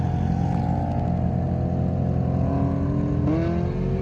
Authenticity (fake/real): real